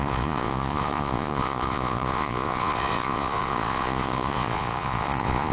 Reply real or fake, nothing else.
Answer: fake